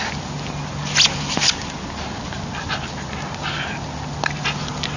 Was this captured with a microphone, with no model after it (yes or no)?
yes